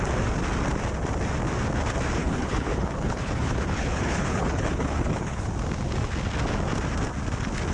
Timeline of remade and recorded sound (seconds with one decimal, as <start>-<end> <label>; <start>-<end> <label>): 0.0-2.2 recorded; 2.2-5.5 remade; 5.5-7.7 recorded